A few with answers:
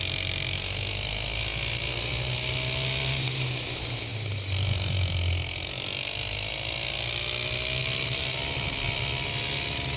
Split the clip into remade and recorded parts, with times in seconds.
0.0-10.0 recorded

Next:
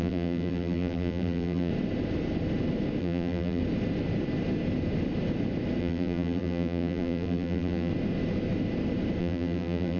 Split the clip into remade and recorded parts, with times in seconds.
0.0-1.7 remade; 1.7-3.0 recorded; 3.0-3.6 remade; 3.6-5.8 recorded; 5.8-7.9 remade; 7.9-9.2 recorded; 9.2-10.0 remade

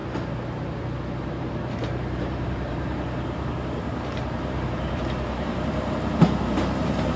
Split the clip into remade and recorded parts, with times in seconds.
0.0-1.2 recorded; 1.2-7.2 remade

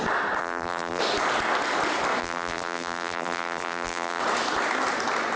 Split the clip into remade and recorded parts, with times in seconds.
0.0-0.4 recorded; 0.4-1.0 remade; 1.0-2.2 recorded; 2.2-4.2 remade; 4.2-5.4 recorded

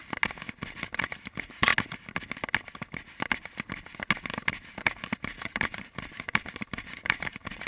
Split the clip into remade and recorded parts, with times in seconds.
0.0-1.0 recorded; 1.0-1.7 remade; 1.7-4.8 recorded; 4.8-7.7 remade